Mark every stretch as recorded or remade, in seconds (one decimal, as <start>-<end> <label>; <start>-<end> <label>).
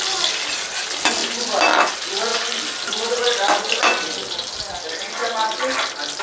0.0-6.2 recorded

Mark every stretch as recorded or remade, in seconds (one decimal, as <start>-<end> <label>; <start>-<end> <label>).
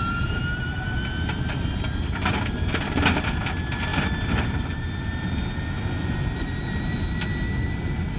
0.0-8.2 recorded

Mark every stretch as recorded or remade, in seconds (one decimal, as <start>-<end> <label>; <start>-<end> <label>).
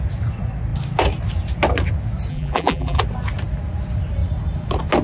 0.0-2.3 recorded; 2.3-3.0 remade; 3.0-5.0 recorded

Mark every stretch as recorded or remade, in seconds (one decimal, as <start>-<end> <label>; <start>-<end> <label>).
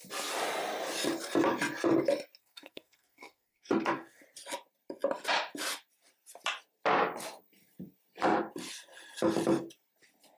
0.0-2.4 recorded; 2.4-4.2 remade; 4.2-10.4 recorded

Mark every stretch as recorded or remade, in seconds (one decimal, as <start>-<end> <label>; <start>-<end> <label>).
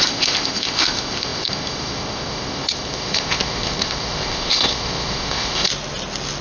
0.0-5.7 remade; 5.7-6.4 recorded